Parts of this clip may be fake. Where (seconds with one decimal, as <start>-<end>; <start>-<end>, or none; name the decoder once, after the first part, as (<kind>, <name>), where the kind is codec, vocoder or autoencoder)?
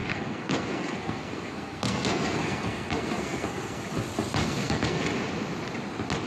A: 0.0-3.8 (codec, SNAC); 4.4-5.0